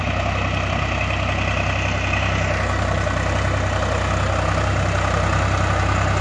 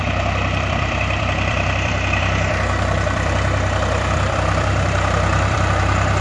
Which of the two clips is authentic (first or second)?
first